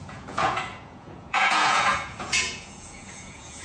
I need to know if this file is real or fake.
fake